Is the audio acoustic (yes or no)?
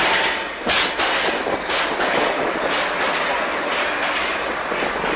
yes